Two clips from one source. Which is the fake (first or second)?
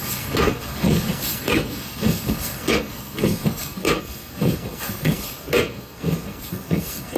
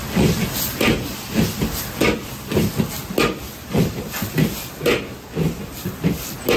first